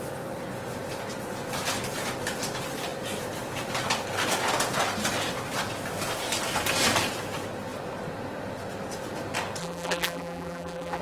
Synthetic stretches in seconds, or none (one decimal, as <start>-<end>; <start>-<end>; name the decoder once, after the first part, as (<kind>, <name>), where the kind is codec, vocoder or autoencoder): 9.6-11.0 (vocoder, BigVGAN v2)